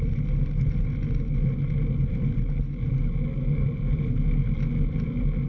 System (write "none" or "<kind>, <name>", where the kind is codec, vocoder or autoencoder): none